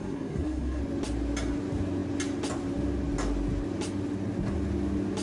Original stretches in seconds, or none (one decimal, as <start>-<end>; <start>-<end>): 0.8-5.2